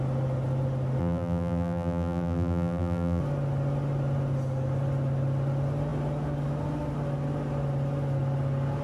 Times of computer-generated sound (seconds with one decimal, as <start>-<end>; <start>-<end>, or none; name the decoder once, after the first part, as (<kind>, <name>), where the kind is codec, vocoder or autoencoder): 1.0-3.2 (vocoder, BigVGAN v2)